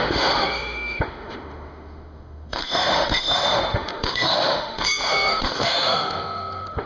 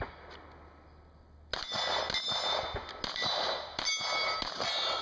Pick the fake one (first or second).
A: first